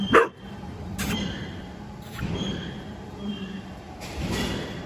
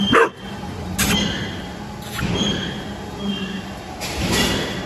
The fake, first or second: first